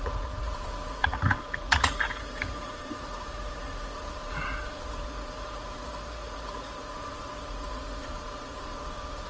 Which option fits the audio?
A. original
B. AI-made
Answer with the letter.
B